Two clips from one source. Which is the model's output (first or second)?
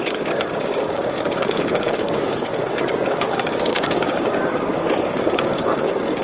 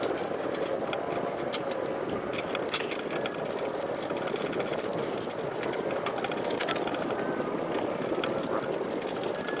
first